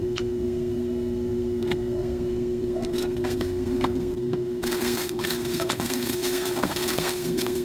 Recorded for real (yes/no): no